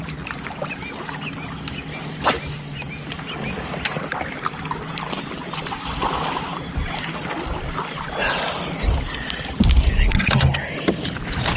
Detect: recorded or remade recorded